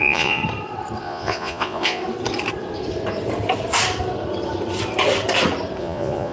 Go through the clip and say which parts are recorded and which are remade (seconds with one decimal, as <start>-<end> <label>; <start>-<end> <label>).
0.0-0.4 remade; 0.4-1.0 recorded; 1.0-2.0 remade; 2.0-5.8 recorded; 5.8-6.3 remade